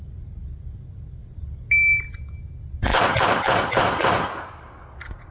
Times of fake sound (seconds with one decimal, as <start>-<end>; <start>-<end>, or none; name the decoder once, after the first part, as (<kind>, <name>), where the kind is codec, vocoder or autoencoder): none

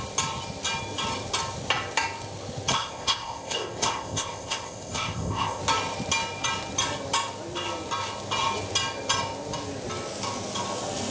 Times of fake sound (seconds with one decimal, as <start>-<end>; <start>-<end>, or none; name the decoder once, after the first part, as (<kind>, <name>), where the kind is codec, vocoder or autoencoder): 2.7-5.6 (codec, ZipCodec)

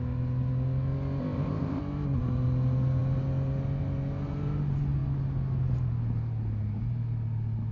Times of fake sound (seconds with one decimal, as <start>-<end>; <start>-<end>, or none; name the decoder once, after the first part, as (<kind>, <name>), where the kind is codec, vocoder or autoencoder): 1.2-1.8 (codec, ZipCodec)

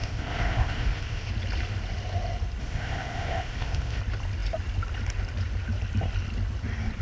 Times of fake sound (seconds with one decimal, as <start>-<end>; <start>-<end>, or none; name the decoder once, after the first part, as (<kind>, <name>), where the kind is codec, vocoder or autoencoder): 0.0-1.3 (codec, ZipCodec); 2.6-4.0

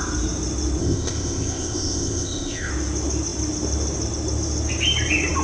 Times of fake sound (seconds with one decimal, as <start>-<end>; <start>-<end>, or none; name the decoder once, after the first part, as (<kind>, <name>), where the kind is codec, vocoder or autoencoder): 0.8-2.7 (codec, ZipCodec)

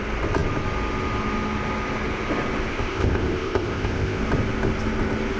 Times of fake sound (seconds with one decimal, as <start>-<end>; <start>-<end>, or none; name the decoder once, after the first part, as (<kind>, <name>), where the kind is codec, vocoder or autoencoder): 2.7-4.2 (codec, ZipCodec)